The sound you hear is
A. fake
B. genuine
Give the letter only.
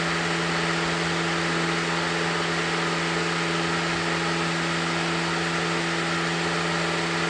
B